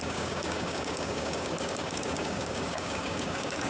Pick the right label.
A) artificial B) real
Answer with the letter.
A